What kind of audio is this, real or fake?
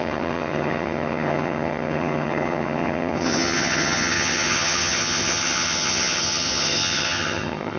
fake